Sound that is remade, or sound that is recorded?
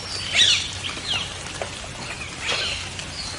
recorded